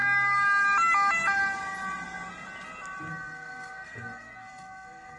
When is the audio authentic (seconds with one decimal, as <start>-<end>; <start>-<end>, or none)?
0.0-3.1